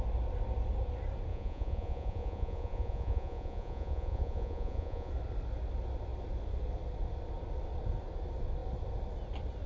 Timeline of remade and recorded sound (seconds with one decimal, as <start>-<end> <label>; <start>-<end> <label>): 0.0-1.3 recorded; 1.3-5.1 remade; 5.1-9.7 recorded